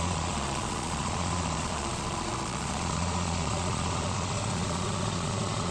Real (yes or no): no